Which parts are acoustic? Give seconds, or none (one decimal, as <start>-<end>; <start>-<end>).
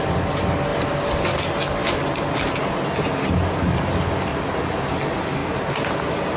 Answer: 0.0-4.3; 4.9-6.4